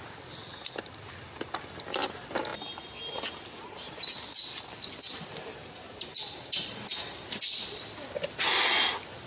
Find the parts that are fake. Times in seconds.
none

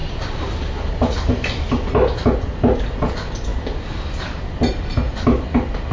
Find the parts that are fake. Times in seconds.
none

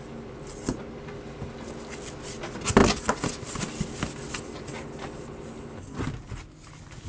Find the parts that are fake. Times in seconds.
none